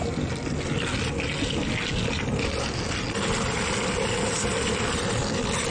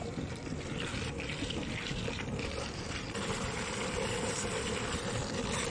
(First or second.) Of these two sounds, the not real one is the second